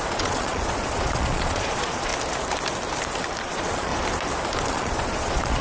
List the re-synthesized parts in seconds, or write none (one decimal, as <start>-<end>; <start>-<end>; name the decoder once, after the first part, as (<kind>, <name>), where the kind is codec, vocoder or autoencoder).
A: 0.0-2.1 (vocoder, Vocos); 3.4-3.9; 4.7-5.6